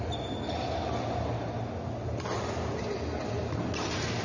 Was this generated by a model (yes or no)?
no